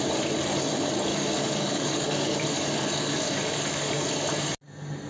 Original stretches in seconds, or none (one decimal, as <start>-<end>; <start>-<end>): 0.0-1.1; 4.1-5.1